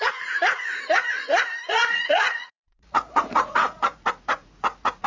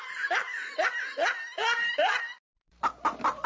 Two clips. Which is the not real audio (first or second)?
first